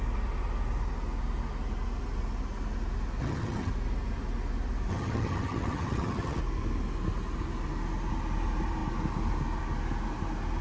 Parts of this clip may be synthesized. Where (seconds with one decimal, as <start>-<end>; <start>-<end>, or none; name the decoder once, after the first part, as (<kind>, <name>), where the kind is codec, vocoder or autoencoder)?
3.2-3.7 (vocoder, HiFi-GAN); 4.9-6.4